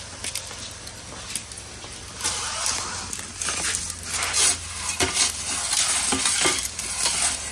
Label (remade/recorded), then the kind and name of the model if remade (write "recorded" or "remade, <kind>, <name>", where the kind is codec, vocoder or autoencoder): recorded